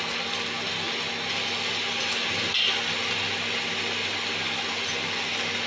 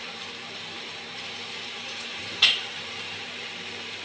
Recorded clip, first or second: first